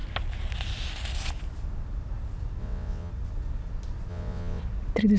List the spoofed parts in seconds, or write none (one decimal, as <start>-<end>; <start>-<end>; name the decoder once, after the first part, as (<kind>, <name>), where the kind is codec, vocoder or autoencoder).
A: 2.6-3.1 (vocoder, WaveNeXt); 4.1-4.6